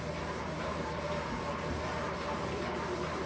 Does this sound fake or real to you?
fake